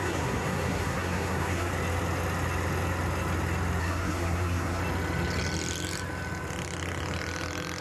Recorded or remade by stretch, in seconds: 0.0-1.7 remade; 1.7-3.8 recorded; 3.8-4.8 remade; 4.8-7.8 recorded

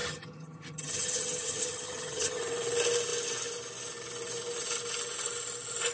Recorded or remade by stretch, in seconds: 0.0-2.4 remade; 2.4-5.9 recorded

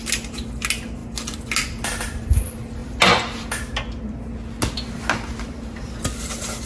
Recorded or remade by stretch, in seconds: 0.0-6.7 recorded

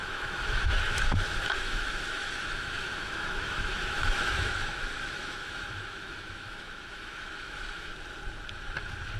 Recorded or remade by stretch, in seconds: 0.0-7.9 remade; 7.9-9.2 recorded

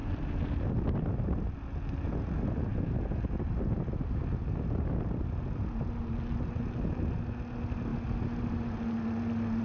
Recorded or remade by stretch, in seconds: 0.0-0.5 remade; 0.5-9.6 recorded

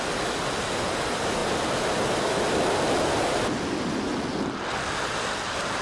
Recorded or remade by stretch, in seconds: 0.0-5.8 recorded